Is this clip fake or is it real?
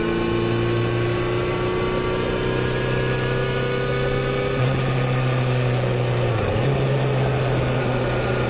real